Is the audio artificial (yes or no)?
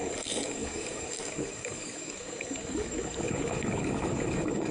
yes